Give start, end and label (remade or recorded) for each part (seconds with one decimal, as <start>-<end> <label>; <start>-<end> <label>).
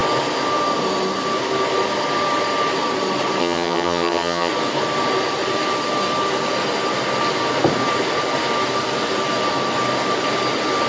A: 0.0-3.4 recorded; 3.4-4.5 remade; 4.5-10.9 recorded